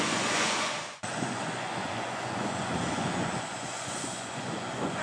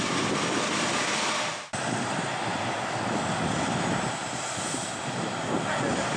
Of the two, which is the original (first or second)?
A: second